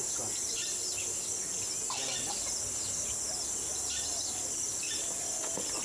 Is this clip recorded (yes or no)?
yes